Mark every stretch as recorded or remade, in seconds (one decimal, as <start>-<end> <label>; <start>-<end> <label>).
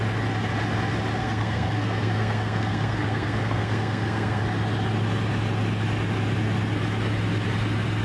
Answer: 0.0-1.2 recorded; 1.2-4.4 remade; 4.4-8.0 recorded